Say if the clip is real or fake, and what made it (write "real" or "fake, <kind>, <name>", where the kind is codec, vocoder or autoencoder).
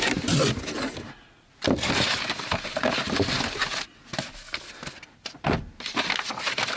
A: real